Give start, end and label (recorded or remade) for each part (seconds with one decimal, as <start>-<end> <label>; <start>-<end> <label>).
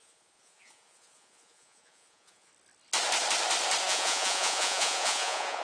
0.0-2.5 remade; 2.5-3.8 recorded; 3.8-5.6 remade